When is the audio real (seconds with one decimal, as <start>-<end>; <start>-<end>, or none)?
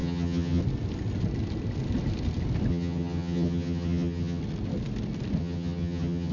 0.6-2.7; 4.4-5.4